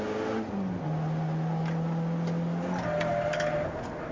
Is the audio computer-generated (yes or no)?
no